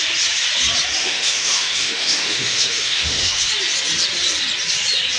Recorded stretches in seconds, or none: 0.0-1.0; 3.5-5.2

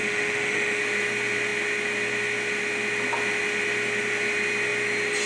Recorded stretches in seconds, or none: 0.8-5.3

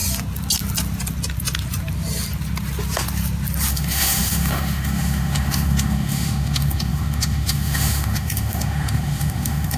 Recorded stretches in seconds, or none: 0.0-3.7

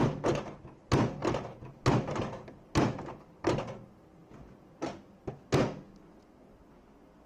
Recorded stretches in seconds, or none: 0.0-7.3

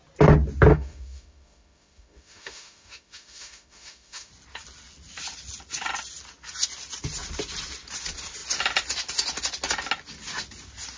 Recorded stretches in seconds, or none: 0.0-0.7; 4.3-11.0

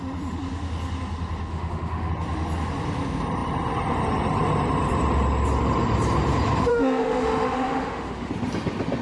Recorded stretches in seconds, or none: 0.0-1.5; 2.1-6.7; 8.3-9.0